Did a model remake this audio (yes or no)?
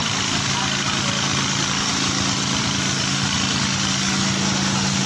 no